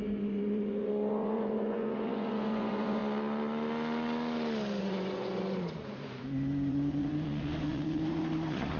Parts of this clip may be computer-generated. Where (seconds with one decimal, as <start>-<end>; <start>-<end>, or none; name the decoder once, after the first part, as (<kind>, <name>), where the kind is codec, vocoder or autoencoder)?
0.0-3.0 (vocoder, Vocos); 4.8-8.8